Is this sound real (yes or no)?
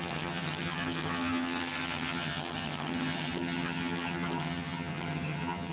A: no